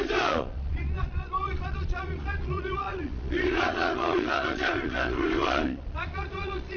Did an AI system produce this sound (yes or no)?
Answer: yes